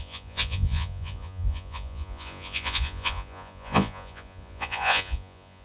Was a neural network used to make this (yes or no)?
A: yes